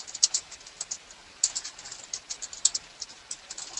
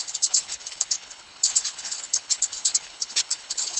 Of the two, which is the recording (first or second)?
first